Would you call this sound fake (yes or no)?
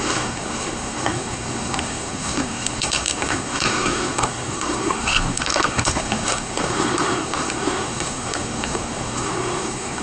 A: yes